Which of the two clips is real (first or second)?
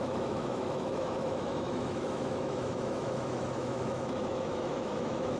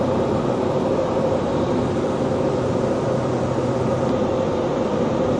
second